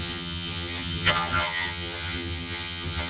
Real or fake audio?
fake